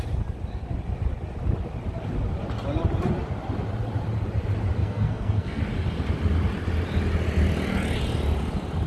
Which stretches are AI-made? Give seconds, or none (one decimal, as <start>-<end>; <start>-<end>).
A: 4.8-5.6